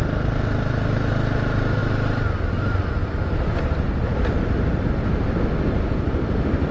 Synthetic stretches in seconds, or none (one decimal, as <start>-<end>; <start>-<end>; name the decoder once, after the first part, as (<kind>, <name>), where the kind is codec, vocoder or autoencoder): none